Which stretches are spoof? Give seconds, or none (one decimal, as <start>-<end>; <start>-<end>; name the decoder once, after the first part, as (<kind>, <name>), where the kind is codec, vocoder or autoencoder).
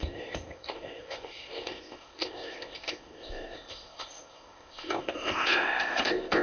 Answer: 0.0-6.4 (codec, ZipCodec)